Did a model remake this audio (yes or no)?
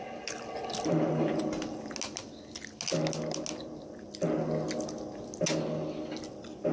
no